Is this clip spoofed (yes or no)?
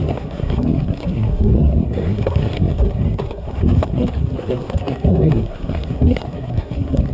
yes